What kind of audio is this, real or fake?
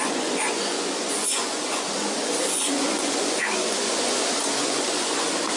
fake